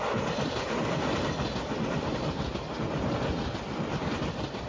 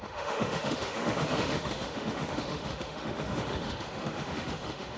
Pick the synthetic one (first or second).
second